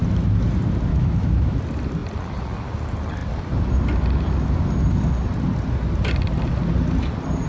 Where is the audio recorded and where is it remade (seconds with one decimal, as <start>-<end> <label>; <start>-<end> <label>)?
0.0-0.9 recorded; 0.9-1.6 remade; 1.6-7.5 recorded